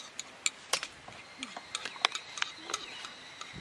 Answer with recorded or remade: recorded